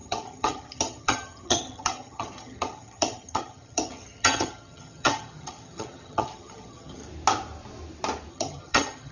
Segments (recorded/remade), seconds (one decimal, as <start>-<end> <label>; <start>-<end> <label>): 0.0-7.0 remade; 7.0-8.3 recorded; 8.3-9.1 remade